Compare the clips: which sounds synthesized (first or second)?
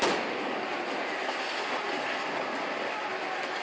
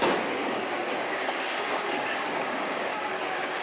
second